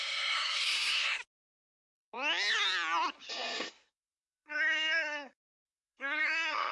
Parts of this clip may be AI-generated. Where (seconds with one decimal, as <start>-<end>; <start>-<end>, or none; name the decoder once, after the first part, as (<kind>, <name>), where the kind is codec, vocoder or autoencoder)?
0.0-1.2 (codec, SNAC); 3.3-6.7